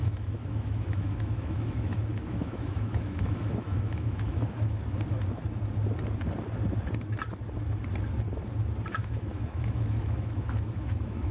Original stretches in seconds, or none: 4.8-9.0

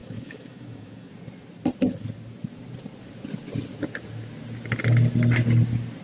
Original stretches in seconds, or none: 1.1-6.0

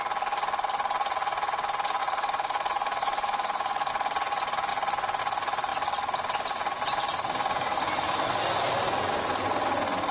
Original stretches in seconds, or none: 0.0-2.0; 3.9-10.1

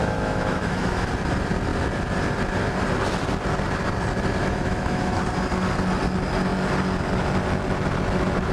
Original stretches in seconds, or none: 1.1-4.4; 5.2-8.5

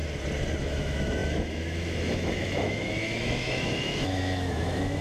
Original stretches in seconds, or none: 0.0-0.6

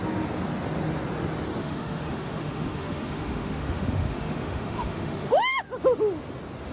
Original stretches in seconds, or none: 0.0-1.6; 5.6-6.7